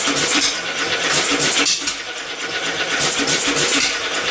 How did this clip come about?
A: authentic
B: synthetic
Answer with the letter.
B